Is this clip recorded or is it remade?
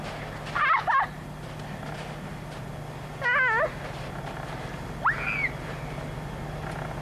recorded